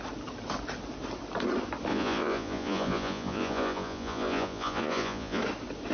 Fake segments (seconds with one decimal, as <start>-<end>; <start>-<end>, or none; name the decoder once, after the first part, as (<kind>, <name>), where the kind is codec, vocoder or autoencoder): 1.9-5.4 (vocoder, Vocos)